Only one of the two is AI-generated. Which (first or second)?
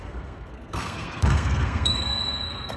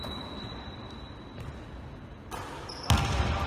first